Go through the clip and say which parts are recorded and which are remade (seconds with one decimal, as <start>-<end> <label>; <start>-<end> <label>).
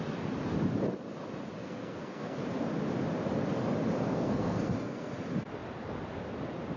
0.0-1.6 recorded; 1.6-2.4 remade; 2.4-4.1 recorded; 4.1-5.1 remade; 5.1-6.8 recorded